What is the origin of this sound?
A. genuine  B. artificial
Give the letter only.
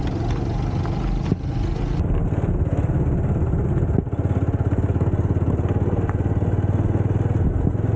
A